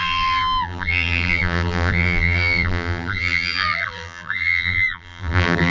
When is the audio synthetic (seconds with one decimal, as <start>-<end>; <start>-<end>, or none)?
0.0-5.7